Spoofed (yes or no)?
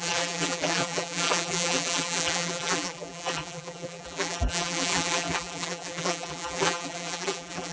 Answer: yes